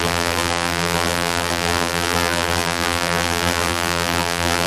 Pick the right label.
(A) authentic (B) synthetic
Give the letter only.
B